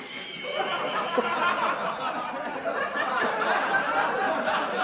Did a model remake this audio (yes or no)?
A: no